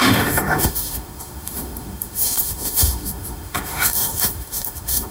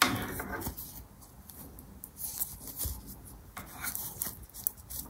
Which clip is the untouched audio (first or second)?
second